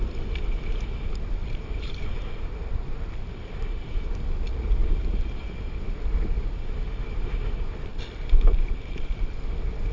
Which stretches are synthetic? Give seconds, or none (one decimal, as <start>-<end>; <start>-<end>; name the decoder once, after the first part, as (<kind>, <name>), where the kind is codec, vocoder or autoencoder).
1.4-4.1 (vocoder, BigVGAN v2); 4.8-5.5; 7.9-9.3